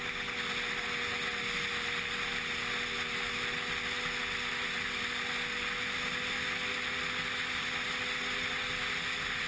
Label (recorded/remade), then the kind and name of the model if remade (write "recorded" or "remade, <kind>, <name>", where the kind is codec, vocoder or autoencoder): recorded